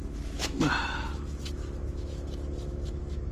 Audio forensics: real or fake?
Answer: fake